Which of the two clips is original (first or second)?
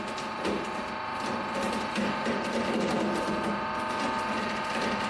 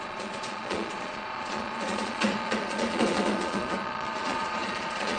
first